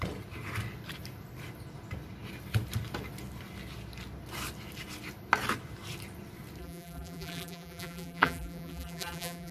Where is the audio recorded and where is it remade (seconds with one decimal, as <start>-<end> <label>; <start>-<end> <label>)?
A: 0.0-6.6 recorded; 6.6-9.5 remade